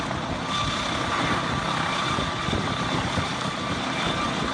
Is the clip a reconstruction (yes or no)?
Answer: no